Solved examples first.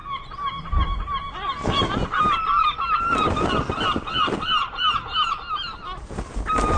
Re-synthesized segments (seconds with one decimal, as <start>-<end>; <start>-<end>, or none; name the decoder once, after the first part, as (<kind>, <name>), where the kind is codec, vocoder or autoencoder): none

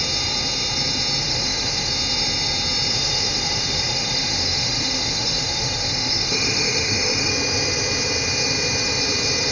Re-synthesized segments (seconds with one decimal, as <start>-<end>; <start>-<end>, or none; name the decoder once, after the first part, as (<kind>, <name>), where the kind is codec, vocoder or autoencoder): 1.2-1.9 (autoencoder, DAC-VAE); 2.9-7.3

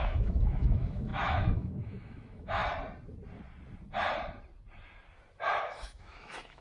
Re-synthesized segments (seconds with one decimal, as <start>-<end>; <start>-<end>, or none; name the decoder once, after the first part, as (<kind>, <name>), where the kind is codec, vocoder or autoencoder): 0.0-2.6 (autoencoder, DAC-VAE); 5.6-6.6

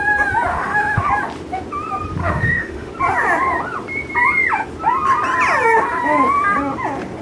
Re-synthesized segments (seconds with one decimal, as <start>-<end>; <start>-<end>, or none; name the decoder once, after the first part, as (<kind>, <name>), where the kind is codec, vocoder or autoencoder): 0.5-1.1 (autoencoder, DAC-VAE); 2.2-2.9